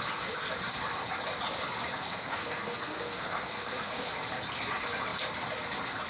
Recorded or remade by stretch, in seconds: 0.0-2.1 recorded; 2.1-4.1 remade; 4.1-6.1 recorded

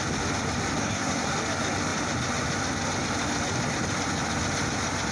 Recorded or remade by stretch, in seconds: 0.0-0.8 recorded; 0.8-1.3 remade; 1.3-5.1 recorded

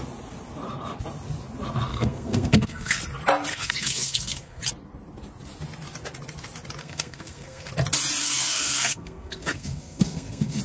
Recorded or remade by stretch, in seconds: 0.0-1.9 recorded; 1.9-3.0 remade; 3.0-3.5 recorded; 3.5-4.6 remade; 4.6-6.8 recorded; 6.8-7.7 remade; 7.7-8.2 recorded; 8.2-10.6 remade

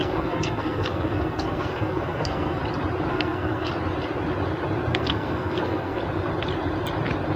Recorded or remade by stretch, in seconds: 0.0-2.6 remade; 2.6-3.1 recorded; 3.1-3.7 remade; 3.7-4.9 recorded; 4.9-6.0 remade; 6.0-7.4 recorded

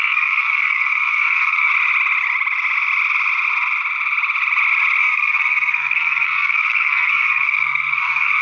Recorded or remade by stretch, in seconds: 0.0-1.7 remade; 1.7-5.0 recorded; 5.0-8.4 remade

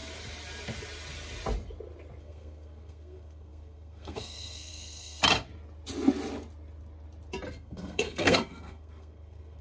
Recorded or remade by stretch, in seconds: 0.0-2.2 recorded; 2.2-5.2 remade; 5.2-7.5 recorded; 7.5-9.6 remade